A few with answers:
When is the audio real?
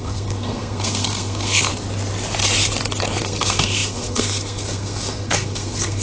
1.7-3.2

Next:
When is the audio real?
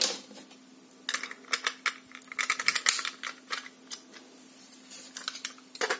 0.0-6.0